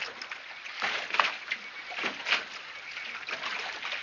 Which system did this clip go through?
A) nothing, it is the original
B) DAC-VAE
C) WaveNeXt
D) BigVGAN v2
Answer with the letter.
A